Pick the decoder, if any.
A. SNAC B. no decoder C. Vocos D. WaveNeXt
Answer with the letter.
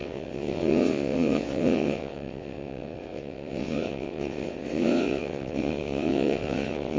D